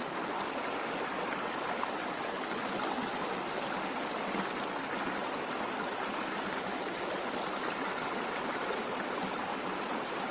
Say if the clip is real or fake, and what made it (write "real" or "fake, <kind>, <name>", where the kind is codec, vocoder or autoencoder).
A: real